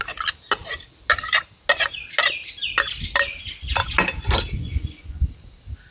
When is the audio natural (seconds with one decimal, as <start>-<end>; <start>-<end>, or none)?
0.0-4.6; 5.3-5.9